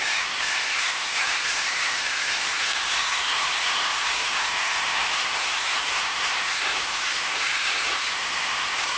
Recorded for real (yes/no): no